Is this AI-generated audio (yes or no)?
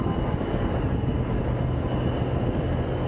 no